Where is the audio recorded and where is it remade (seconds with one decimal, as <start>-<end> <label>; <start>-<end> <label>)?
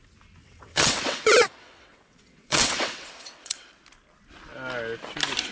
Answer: 0.0-0.4 recorded; 0.4-3.7 remade; 3.7-5.5 recorded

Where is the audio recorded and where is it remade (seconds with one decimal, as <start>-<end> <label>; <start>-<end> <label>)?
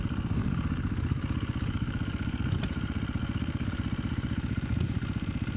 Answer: 0.0-0.4 recorded; 0.4-2.6 remade; 2.6-3.2 recorded; 3.2-3.7 remade; 3.7-5.6 recorded